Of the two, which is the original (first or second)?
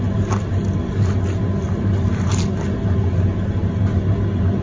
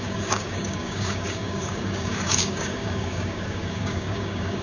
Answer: first